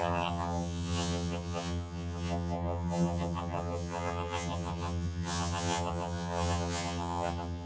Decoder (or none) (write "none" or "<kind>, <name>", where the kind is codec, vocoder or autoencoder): vocoder, HiFi-GAN